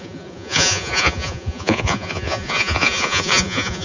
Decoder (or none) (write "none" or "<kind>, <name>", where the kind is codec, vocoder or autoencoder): vocoder, Vocos